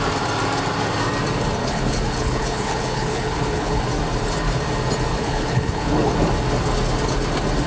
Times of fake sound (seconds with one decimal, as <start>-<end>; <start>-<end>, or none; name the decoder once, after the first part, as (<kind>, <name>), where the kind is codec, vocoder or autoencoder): 1.6-3.8 (codec, HILCodec); 5.1-6.1

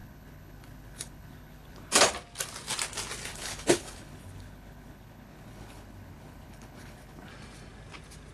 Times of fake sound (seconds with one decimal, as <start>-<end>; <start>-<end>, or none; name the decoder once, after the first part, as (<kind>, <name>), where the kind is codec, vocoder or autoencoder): 0.0-2.0 (codec, HILCodec); 3.3-7.3

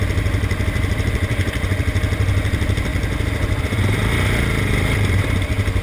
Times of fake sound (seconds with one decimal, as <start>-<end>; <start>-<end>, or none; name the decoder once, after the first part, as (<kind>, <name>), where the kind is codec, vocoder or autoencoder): 0.0-5.8 (vocoder, BigVGAN v2)